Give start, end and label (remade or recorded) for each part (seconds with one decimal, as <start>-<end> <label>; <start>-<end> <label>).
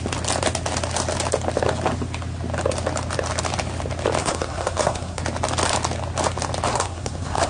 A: 0.0-4.2 recorded; 4.2-5.2 remade; 5.2-6.7 recorded; 6.7-7.5 remade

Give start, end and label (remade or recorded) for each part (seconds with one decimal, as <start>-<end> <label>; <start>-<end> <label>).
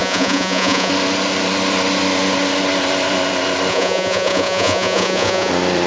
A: 0.0-0.9 remade; 0.9-3.7 recorded; 3.7-5.5 remade; 5.5-5.9 recorded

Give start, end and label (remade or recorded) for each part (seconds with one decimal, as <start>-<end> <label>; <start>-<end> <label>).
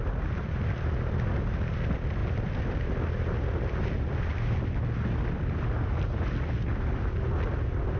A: 0.0-8.0 recorded